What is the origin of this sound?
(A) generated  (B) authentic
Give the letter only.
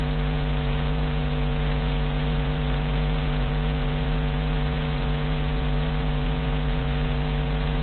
A